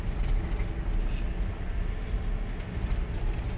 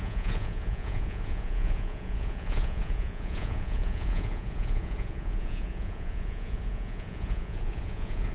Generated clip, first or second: second